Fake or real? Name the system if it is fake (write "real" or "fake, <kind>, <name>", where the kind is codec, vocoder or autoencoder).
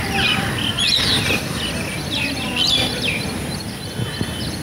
real